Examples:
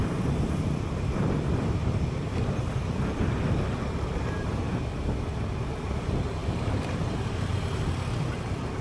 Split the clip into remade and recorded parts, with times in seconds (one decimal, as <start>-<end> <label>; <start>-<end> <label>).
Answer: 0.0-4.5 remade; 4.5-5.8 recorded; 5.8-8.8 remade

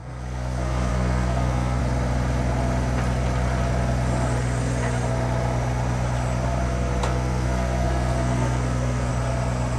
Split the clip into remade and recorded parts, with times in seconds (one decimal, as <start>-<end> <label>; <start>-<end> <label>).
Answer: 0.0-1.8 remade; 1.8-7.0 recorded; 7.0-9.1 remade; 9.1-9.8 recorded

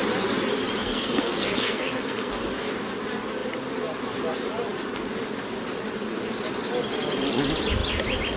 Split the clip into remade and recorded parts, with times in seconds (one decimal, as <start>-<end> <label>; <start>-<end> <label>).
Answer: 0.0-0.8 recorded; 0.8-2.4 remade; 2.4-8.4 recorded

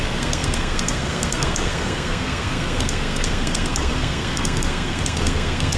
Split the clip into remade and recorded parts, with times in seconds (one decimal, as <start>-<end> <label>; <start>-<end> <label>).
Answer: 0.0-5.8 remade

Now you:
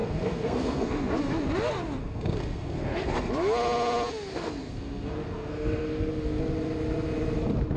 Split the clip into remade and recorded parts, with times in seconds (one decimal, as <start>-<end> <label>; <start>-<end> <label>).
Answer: 0.0-1.1 remade; 1.1-2.0 recorded; 2.0-3.3 remade; 3.3-4.3 recorded; 4.3-6.4 remade; 6.4-7.8 recorded

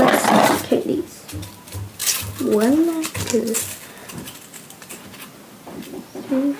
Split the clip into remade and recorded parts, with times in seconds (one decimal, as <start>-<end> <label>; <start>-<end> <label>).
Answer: 0.0-6.6 recorded

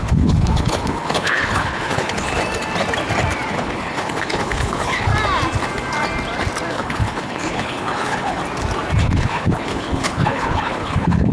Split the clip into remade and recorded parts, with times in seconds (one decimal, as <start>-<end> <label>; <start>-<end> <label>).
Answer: 0.0-2.4 remade; 2.4-3.5 recorded; 3.5-5.1 remade; 5.1-6.7 recorded; 6.7-8.4 remade; 8.4-9.0 recorded; 9.0-11.3 remade